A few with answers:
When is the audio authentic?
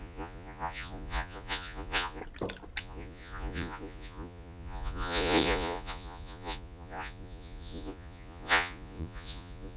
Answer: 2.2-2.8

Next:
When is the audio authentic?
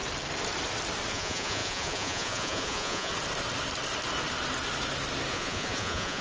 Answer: 0.0-1.1; 3.1-5.3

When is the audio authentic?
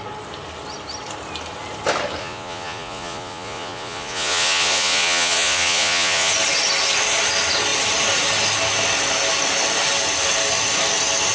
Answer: 0.0-2.2; 6.3-11.3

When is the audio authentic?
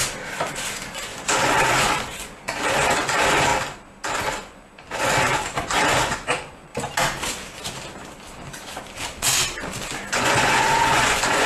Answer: 0.0-0.5; 3.5-4.2; 6.7-10.1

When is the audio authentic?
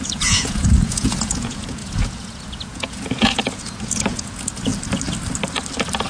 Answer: 4.7-6.1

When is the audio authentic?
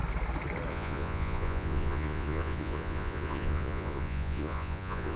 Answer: 0.0-0.7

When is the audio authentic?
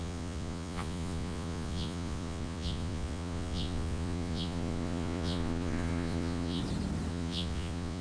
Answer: 6.6-7.1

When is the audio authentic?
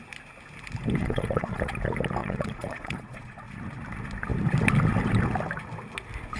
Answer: 0.0-1.0; 1.7-2.2; 3.4-6.4